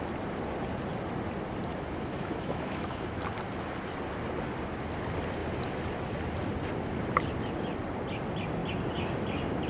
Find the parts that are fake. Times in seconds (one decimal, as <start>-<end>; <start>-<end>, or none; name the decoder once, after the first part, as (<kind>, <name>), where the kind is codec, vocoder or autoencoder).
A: 1.7-3.2 (autoencoder, DAC-VAE)